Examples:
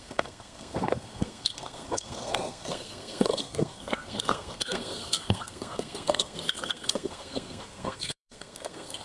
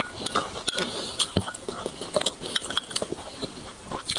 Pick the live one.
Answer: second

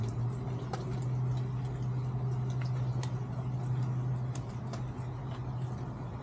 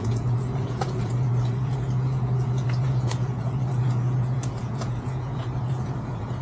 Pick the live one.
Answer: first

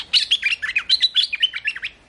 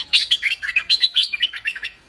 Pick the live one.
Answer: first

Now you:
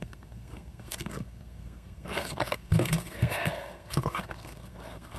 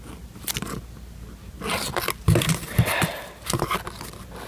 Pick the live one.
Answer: second